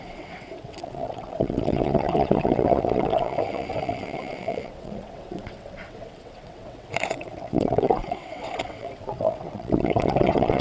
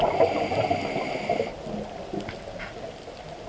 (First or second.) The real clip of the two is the second